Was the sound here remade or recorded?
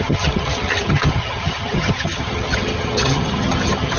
remade